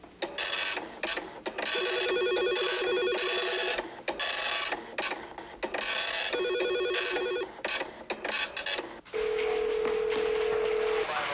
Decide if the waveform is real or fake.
real